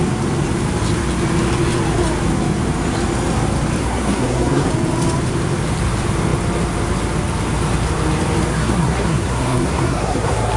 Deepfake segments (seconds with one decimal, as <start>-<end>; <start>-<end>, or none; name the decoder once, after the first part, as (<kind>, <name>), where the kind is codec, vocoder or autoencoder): 3.8-4.7 (codec, SNAC); 8.5-10.6